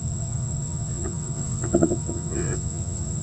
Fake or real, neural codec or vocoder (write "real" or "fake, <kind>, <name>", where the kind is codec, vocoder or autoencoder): fake, vocoder, WaveNeXt